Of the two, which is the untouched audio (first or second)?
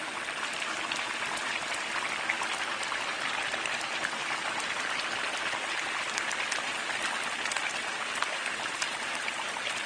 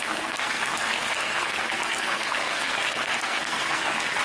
first